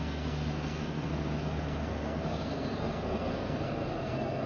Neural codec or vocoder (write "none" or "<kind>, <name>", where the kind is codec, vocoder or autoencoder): codec, SNAC